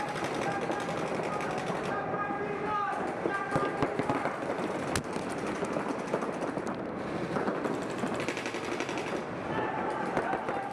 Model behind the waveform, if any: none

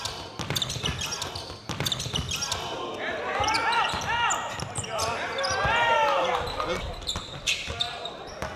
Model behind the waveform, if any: none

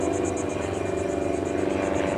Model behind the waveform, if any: none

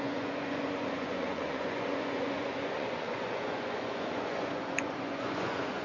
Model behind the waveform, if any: vocoder, Vocos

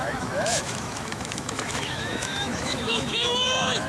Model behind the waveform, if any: autoencoder, DAC-VAE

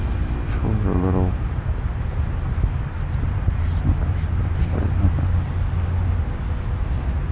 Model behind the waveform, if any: none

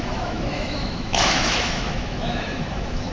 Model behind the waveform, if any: autoencoder, DAC-VAE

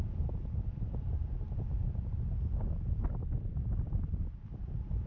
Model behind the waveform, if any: none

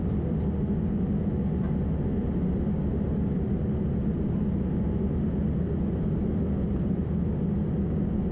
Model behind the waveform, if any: none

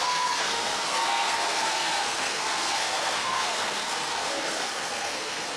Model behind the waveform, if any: codec, SNAC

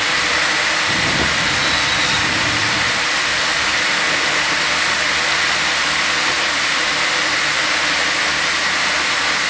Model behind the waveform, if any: none